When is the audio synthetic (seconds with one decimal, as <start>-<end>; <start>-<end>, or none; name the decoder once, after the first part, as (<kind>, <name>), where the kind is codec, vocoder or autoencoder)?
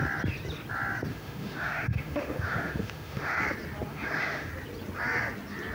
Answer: 1.1-3.4 (autoencoder, DAC-VAE); 3.9-4.5